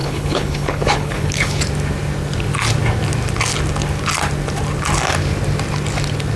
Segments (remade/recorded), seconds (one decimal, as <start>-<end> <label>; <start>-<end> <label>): 0.0-1.6 remade; 1.6-6.4 recorded